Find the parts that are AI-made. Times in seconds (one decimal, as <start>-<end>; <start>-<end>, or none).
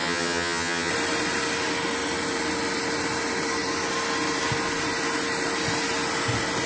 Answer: 0.0-0.9